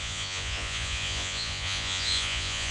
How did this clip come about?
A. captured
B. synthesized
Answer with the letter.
B